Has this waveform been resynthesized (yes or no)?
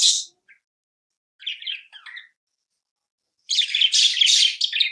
no